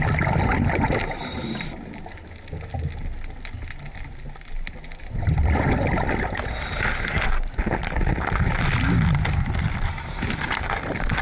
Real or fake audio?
real